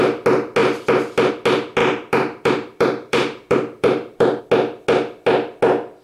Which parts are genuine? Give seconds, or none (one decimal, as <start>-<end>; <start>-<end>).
0.0-1.8; 4.4-6.0